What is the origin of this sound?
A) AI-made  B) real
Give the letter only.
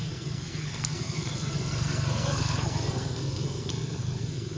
A